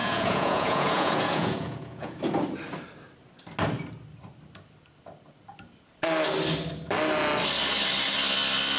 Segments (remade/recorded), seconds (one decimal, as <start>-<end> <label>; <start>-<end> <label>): 0.0-2.2 remade; 2.2-8.8 recorded